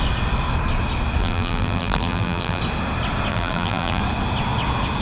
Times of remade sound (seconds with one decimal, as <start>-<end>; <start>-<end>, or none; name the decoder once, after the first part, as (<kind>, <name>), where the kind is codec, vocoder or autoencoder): 1.2-2.6 (vocoder, BigVGAN v2); 3.3-4.0